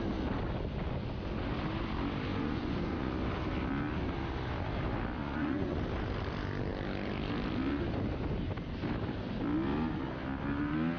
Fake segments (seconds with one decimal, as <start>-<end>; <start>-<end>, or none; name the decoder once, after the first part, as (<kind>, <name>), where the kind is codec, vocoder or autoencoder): 2.3-3.1 (vocoder, Vocos); 5.2-5.8